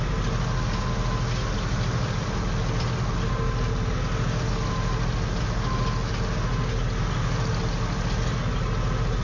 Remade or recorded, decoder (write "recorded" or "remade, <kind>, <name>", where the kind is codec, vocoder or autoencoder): recorded